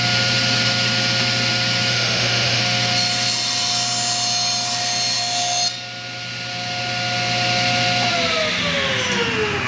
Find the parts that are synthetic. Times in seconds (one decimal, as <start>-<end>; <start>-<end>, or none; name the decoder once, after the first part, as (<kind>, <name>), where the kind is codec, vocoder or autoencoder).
1.9-2.6 (autoencoder, DAC-VAE)